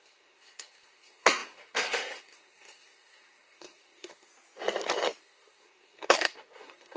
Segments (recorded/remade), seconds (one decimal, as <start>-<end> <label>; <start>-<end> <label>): 0.0-4.3 remade; 4.3-5.2 recorded; 5.2-7.0 remade